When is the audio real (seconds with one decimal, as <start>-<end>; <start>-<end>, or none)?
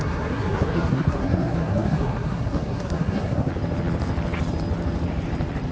3.5-5.7